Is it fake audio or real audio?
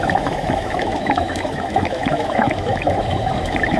fake